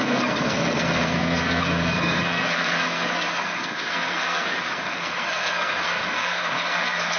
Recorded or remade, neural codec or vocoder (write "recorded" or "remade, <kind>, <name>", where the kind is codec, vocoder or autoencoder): remade, codec, SNAC